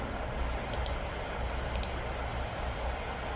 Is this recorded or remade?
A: recorded